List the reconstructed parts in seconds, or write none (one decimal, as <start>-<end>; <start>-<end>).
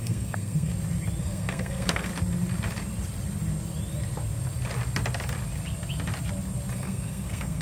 0.0-0.7; 1.2-2.1; 6.7-7.6